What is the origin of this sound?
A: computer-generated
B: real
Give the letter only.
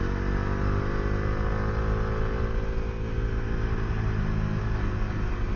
B